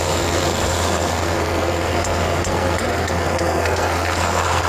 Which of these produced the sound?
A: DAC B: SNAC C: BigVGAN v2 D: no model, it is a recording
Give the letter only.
B